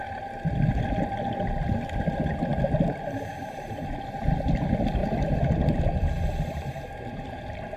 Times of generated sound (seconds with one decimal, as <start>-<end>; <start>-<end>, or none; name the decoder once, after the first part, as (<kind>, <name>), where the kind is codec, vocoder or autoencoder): none